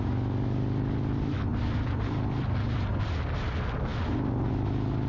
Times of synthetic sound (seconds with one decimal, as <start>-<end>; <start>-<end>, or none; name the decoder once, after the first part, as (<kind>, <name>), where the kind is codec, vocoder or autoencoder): 1.5-2.9 (vocoder, BigVGAN v2)